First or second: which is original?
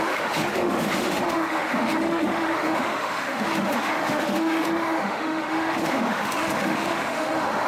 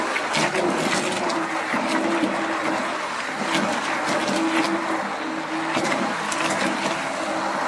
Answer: second